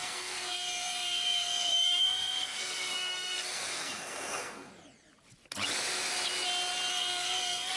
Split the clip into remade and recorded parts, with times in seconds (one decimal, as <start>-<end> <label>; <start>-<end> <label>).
0.0-4.7 remade; 4.7-6.9 recorded; 6.9-7.8 remade